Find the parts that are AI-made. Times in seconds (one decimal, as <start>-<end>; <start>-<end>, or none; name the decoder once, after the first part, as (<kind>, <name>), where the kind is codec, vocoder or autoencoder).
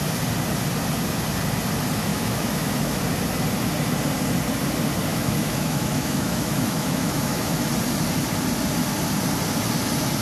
2.1-3.0 (autoencoder, DAC-VAE); 5.1-7.7